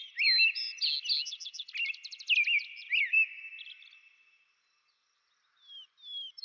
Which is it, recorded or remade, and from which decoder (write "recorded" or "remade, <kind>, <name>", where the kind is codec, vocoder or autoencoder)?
recorded